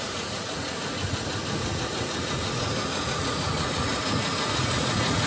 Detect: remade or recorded remade